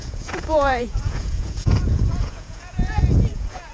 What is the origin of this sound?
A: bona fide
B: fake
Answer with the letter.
B